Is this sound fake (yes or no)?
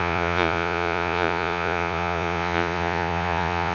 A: yes